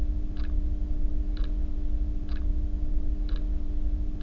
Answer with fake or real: real